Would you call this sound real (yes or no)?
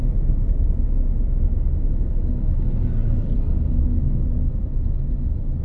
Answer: yes